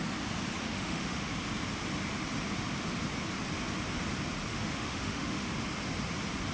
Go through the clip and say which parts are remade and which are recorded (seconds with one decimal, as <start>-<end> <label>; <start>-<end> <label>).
0.0-0.6 recorded; 0.6-1.3 remade; 1.3-4.5 recorded; 4.5-5.5 remade; 5.5-6.5 recorded